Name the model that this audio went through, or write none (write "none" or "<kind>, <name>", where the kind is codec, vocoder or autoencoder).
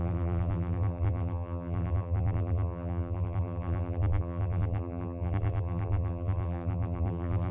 vocoder, BigVGAN v2